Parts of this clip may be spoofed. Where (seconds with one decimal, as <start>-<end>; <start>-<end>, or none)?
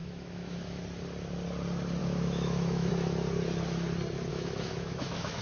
0.0-0.8; 2.0-2.9; 4.3-5.4